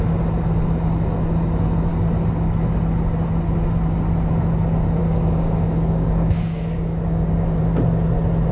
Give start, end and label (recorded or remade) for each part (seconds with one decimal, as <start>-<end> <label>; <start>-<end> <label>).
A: 0.0-5.0 recorded; 5.0-7.6 remade; 7.6-8.5 recorded